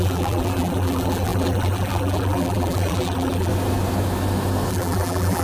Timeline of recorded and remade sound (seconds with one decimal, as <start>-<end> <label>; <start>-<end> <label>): 0.0-3.5 remade; 3.5-4.7 recorded; 4.7-5.4 remade